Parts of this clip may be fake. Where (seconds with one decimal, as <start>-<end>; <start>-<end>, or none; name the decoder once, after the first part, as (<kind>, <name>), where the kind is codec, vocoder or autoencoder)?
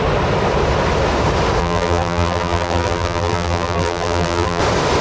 1.6-4.6 (vocoder, BigVGAN v2)